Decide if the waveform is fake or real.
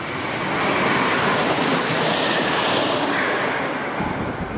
real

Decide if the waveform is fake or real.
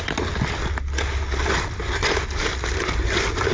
real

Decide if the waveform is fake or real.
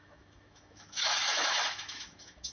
fake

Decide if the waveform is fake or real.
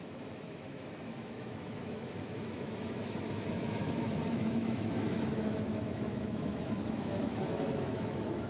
fake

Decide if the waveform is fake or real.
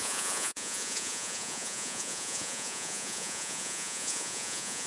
fake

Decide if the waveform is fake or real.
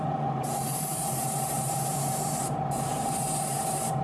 fake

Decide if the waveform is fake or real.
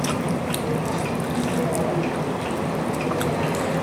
real